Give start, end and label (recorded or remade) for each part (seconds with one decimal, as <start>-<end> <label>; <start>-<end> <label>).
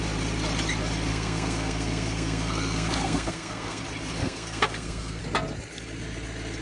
0.0-1.1 recorded; 1.1-3.8 remade; 3.8-4.2 recorded; 4.2-5.2 remade; 5.2-6.6 recorded